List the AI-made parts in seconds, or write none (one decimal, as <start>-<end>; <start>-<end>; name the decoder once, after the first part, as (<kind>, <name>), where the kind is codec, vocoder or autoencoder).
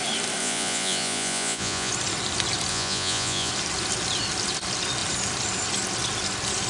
0.4-1.9 (vocoder, Vocos); 2.7-3.5